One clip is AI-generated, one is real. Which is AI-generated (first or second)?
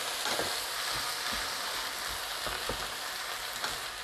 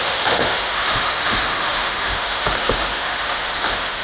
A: second